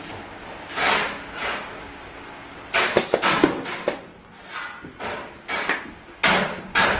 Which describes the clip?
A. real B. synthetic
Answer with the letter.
A